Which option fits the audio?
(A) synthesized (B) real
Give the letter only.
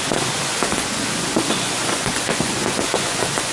A